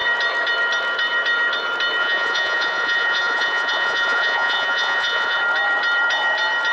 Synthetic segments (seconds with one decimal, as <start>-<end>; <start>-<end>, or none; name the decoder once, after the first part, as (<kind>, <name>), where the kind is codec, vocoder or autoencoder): 2.0-5.4 (vocoder, Vocos)